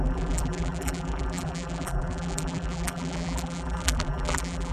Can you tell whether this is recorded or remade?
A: remade